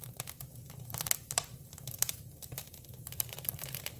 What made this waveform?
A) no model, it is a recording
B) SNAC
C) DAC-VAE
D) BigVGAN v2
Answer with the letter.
D